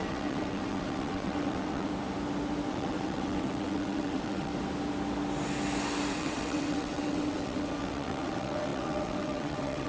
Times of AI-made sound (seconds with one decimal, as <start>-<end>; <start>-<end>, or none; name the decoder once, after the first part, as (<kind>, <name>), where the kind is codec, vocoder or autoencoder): 0.0-1.9 (vocoder, WaveNeXt); 2.7-4.5; 6.1-9.9